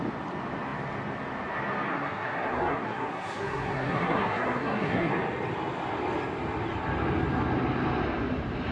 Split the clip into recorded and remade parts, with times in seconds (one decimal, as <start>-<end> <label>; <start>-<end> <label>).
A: 0.0-1.9 recorded; 1.9-5.1 remade; 5.1-8.7 recorded